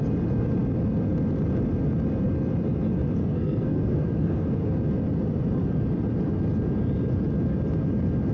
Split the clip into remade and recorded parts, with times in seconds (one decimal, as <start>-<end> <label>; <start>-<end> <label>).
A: 0.0-3.2 recorded; 3.2-4.7 remade; 4.7-8.3 recorded